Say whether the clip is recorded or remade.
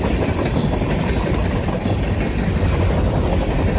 recorded